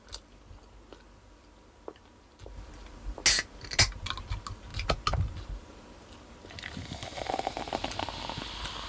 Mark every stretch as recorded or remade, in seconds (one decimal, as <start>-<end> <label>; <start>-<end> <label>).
0.0-8.9 recorded

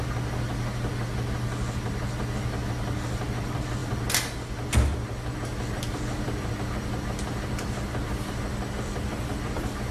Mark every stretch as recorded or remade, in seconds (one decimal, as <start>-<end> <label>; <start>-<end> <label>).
0.0-9.9 recorded

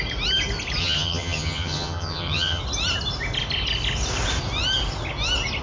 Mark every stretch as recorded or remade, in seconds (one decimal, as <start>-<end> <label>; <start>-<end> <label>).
0.0-0.8 recorded; 0.8-2.6 remade; 2.6-5.6 recorded